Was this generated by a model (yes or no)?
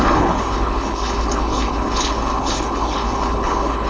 yes